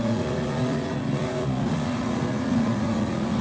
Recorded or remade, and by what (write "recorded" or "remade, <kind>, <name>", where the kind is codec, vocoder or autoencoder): remade, vocoder, Vocos